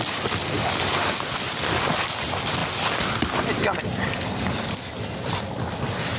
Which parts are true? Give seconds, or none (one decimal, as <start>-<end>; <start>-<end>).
0.0-6.2